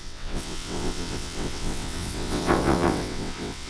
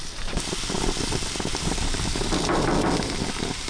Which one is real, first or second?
second